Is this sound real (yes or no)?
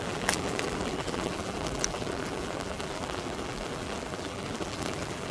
no